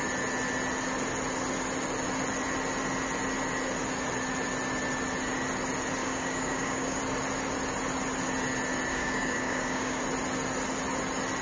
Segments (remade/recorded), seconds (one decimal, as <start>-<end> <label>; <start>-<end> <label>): 0.0-6.0 recorded; 6.0-7.0 remade; 7.0-8.9 recorded; 8.9-10.0 remade; 10.0-11.4 recorded

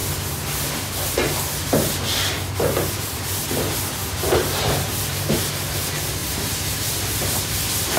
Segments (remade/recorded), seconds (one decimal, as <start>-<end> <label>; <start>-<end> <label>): 0.0-4.0 recorded; 4.0-5.4 remade; 5.4-6.2 recorded; 6.2-7.4 remade; 7.4-8.0 recorded

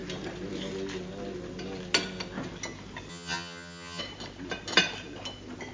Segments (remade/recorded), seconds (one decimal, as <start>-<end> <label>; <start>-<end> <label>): 0.0-3.1 recorded; 3.1-4.0 remade; 4.0-5.7 recorded